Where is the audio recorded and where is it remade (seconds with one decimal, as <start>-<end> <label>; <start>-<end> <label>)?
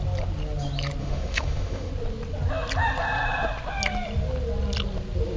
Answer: 0.0-1.0 recorded; 1.0-1.9 remade; 1.9-5.4 recorded